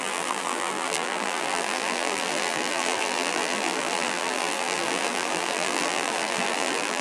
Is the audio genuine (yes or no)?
no